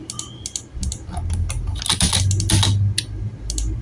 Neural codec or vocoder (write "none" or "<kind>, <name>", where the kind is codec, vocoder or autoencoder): none